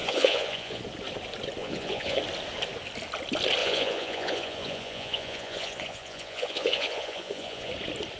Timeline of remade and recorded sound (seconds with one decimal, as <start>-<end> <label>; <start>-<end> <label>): 0.0-0.8 remade; 0.8-1.6 recorded; 1.6-2.2 remade; 2.2-3.6 recorded; 3.6-7.7 remade; 7.7-8.2 recorded